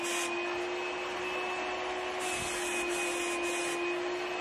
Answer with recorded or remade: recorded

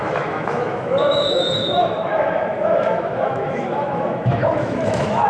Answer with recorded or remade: remade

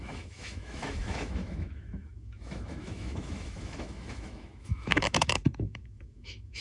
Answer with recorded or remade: remade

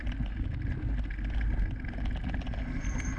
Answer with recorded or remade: recorded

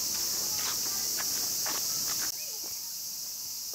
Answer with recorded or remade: recorded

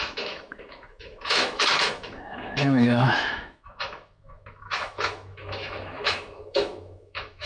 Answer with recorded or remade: remade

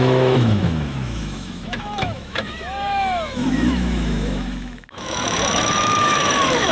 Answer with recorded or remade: remade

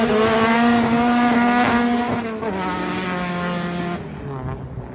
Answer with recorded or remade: recorded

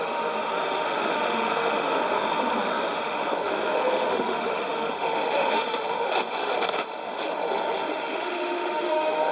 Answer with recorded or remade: remade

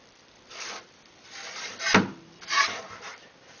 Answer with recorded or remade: recorded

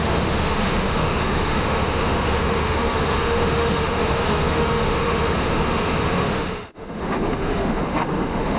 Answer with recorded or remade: remade